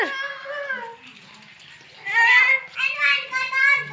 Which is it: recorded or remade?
recorded